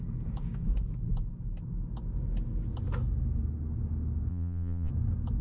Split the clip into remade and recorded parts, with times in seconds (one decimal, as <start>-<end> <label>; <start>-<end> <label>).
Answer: 0.0-4.3 recorded; 4.3-4.9 remade; 4.9-5.4 recorded